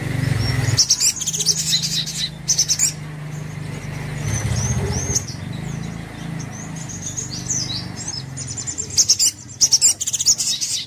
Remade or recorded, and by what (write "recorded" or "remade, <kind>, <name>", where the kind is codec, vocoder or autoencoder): recorded